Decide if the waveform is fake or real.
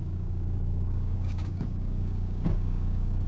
fake